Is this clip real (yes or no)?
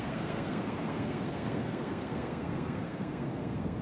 no